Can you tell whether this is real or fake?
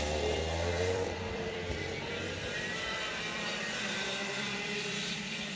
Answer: fake